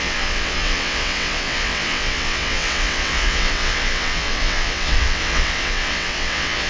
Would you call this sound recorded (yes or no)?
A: no